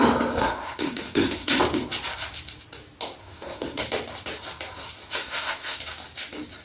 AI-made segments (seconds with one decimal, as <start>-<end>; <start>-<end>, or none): 0.4-1.6; 3.2-3.8; 5.2-5.8